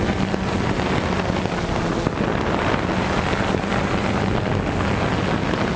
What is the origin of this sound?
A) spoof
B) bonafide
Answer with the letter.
B